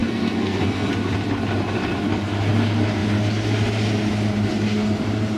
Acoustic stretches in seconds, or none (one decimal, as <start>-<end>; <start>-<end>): 0.9-5.4